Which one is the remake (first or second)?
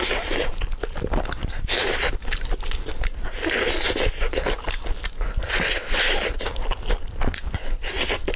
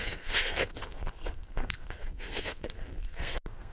second